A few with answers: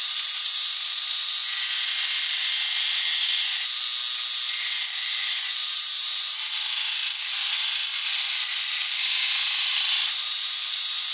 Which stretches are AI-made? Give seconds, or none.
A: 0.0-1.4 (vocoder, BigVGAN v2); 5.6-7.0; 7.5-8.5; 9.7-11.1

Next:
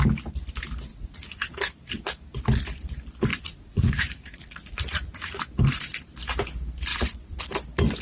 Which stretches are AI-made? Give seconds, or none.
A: 0.9-1.5 (vocoder, Vocos); 3.3-5.4; 6.9-7.4

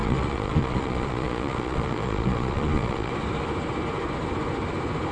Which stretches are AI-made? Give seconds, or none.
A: 0.0-3.1 (vocoder, Vocos)

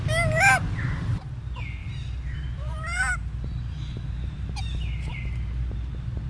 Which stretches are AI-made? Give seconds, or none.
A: 1.8-5.1 (vocoder, BigVGAN v2)

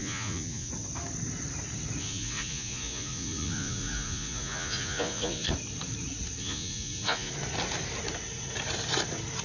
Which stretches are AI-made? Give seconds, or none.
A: 0.0-0.7 (vocoder, Vocos); 2.0-5.5; 6.4-7.3